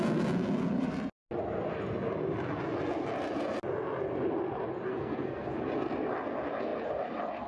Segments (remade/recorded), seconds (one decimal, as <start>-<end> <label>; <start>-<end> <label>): 0.0-4.9 recorded; 4.9-5.5 remade; 5.5-7.5 recorded

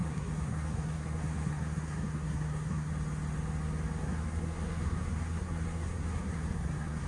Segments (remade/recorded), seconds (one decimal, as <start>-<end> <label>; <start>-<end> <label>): 0.0-2.9 remade; 2.9-4.0 recorded; 4.0-7.1 remade

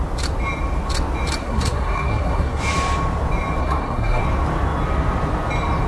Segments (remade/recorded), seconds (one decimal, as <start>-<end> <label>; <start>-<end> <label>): 0.0-1.4 recorded; 1.4-2.6 remade; 2.6-3.6 recorded; 3.6-4.2 remade; 4.2-5.9 recorded

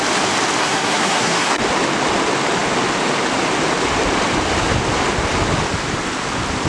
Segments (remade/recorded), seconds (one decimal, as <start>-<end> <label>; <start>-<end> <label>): 0.0-0.6 recorded; 0.6-1.6 remade; 1.6-6.7 recorded